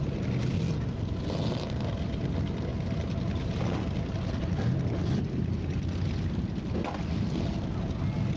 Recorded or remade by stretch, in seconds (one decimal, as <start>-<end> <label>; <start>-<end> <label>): 0.0-8.4 recorded